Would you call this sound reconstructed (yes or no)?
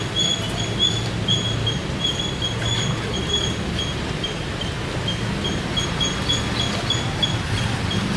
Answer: no